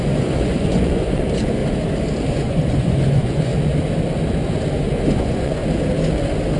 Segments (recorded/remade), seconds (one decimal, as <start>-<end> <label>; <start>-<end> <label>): 0.0-1.6 remade; 1.6-2.3 recorded; 2.3-3.5 remade; 3.5-5.1 recorded; 5.1-5.6 remade; 5.6-6.6 recorded